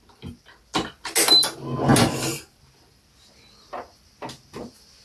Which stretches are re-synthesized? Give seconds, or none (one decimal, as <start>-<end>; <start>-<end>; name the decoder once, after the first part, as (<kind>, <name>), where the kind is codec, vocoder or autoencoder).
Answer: none